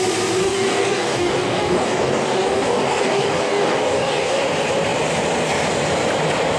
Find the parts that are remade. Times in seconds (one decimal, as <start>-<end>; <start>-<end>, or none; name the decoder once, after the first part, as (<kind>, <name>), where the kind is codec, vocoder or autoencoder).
0.4-4.4 (codec, DAC)